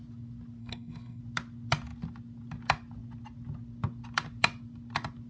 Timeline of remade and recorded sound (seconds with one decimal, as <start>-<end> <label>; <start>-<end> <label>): 0.0-0.6 recorded; 0.6-1.2 remade; 1.2-5.3 recorded